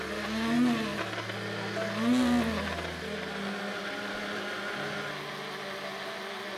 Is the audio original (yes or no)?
yes